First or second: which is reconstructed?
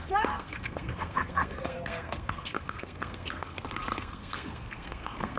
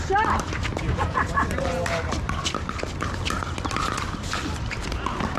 first